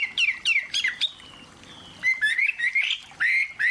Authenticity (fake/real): fake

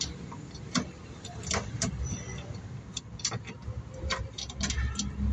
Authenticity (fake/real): real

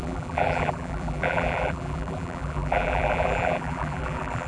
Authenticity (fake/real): fake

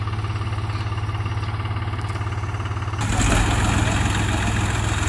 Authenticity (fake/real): real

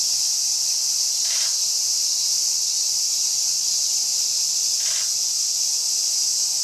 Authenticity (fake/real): fake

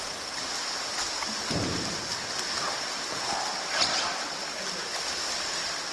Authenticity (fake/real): real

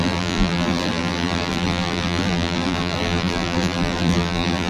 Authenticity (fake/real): fake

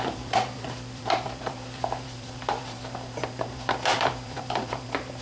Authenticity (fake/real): fake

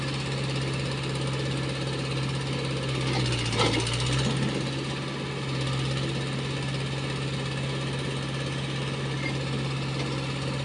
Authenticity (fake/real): real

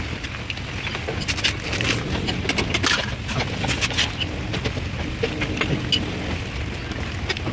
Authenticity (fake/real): real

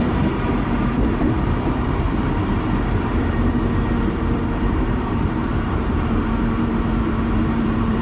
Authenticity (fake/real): fake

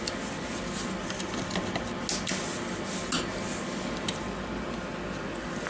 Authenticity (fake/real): real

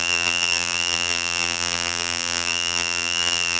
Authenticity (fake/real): fake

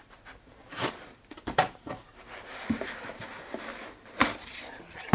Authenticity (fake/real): fake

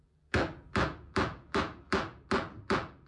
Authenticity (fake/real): fake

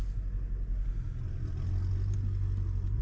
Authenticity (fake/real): real